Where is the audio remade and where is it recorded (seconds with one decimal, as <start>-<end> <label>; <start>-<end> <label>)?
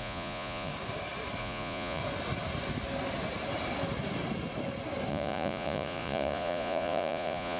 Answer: 0.0-0.7 remade; 0.7-1.4 recorded; 1.4-2.0 remade; 2.0-5.1 recorded; 5.1-7.6 remade